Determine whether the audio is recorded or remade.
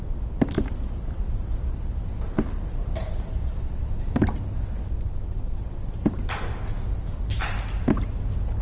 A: recorded